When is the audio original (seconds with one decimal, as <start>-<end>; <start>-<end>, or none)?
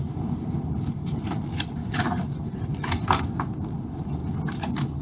1.8-3.3; 4.2-5.0